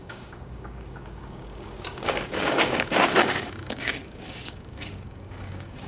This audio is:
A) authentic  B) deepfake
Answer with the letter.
B